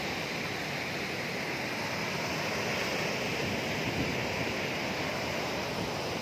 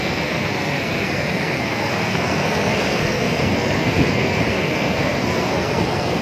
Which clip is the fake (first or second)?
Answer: second